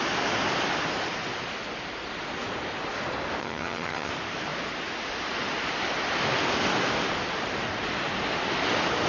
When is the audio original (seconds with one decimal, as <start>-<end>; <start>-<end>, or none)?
0.0-3.4; 4.1-9.1